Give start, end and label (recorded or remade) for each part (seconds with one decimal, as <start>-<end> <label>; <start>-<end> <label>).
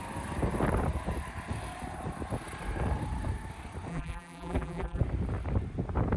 0.0-3.9 recorded; 3.9-5.0 remade; 5.0-6.2 recorded